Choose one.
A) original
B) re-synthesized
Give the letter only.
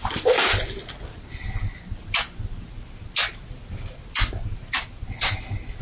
A